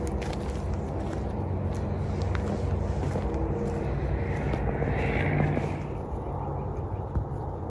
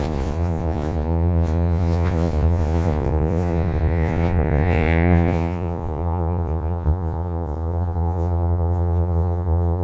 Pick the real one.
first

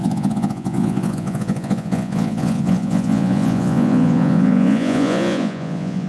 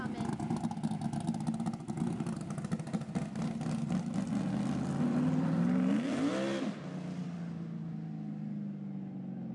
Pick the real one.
second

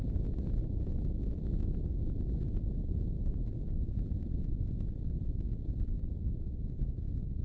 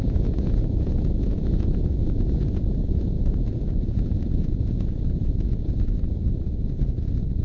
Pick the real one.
first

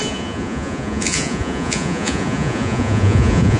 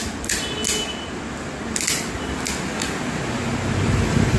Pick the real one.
second